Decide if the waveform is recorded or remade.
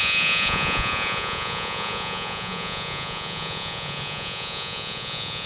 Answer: remade